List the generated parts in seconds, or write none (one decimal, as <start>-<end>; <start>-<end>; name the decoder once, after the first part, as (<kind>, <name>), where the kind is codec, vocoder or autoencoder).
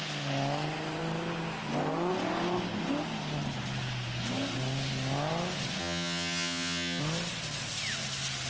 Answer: 5.8-7.0 (vocoder, HiFi-GAN)